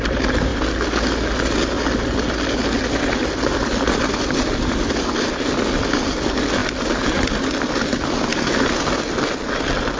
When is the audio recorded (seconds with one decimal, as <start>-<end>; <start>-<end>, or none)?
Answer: 0.0-10.0